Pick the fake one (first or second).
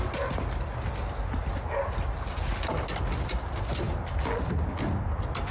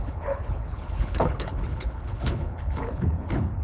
second